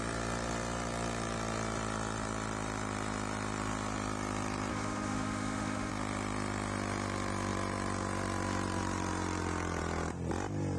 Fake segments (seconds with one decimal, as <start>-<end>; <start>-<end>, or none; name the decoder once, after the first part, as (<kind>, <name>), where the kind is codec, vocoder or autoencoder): 4.7-5.9 (autoencoder, DAC-VAE)